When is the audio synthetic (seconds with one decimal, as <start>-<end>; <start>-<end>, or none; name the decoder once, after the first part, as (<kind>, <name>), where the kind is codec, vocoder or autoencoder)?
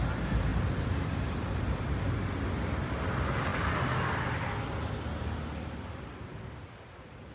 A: none